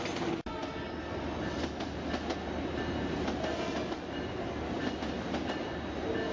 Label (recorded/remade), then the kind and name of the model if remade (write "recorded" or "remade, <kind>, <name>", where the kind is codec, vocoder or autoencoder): recorded